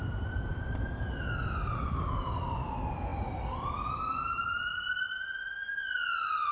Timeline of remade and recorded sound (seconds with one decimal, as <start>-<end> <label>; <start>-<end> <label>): 0.0-6.5 recorded

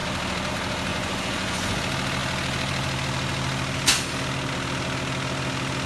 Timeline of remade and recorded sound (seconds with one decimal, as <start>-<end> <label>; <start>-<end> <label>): 0.0-0.9 recorded; 0.9-1.8 remade; 1.8-5.9 recorded

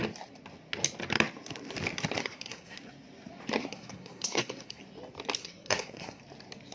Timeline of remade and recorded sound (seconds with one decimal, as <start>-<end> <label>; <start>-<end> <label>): 0.0-2.2 recorded; 2.2-2.8 remade; 2.8-3.6 recorded; 3.6-4.8 remade; 4.8-5.4 recorded; 5.4-6.2 remade; 6.2-6.7 recorded

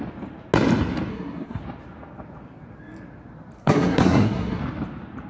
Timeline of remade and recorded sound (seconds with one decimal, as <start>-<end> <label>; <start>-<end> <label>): 0.0-1.1 recorded; 1.1-1.6 remade; 1.6-3.6 recorded; 3.6-4.6 remade; 4.6-5.3 recorded

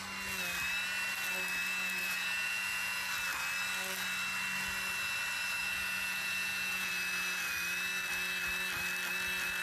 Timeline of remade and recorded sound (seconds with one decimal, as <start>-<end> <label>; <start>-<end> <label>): 0.0-1.6 recorded; 1.6-3.1 remade; 3.1-5.6 recorded; 5.6-6.9 remade; 6.9-9.6 recorded